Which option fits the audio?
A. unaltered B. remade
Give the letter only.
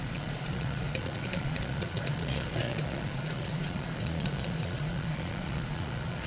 B